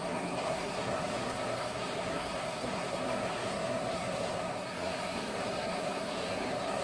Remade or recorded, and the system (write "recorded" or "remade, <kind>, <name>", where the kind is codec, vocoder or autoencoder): remade, codec, SNAC